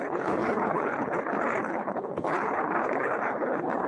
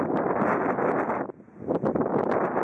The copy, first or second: first